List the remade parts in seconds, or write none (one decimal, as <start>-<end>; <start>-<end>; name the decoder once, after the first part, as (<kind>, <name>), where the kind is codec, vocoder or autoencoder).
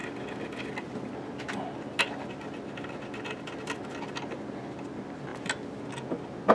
none